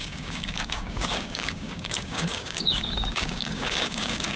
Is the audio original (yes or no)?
no